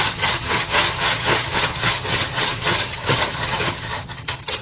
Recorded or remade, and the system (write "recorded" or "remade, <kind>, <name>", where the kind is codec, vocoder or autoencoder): remade, vocoder, HiFi-GAN